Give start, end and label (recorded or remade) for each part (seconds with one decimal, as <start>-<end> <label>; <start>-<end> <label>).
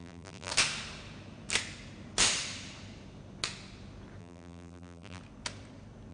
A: 0.0-0.5 remade; 0.5-4.2 recorded; 4.2-5.2 remade; 5.2-6.1 recorded